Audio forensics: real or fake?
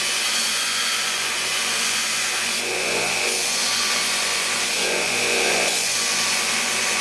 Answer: fake